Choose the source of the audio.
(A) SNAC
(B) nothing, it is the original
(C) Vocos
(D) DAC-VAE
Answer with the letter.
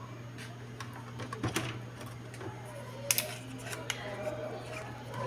B